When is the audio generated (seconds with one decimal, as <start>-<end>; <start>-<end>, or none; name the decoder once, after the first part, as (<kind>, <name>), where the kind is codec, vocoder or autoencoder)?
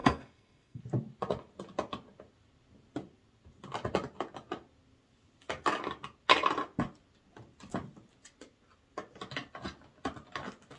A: 0.0-0.8 (codec, SNAC)